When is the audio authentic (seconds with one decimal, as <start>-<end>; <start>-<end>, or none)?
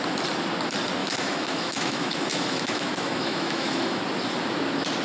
0.0-1.0; 4.0-5.0